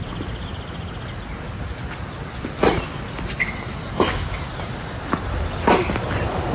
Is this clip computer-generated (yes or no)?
no